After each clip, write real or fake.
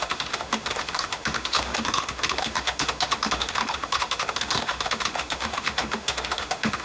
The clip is fake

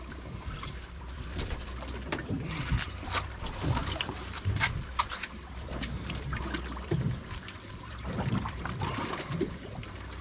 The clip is fake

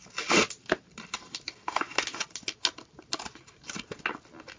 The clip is real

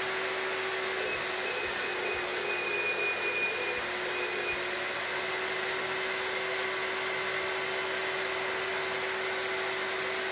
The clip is real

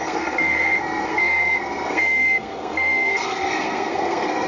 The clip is fake